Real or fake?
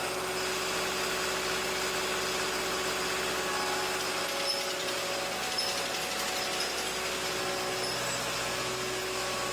real